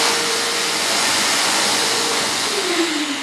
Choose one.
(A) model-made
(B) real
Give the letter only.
A